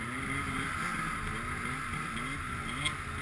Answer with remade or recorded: recorded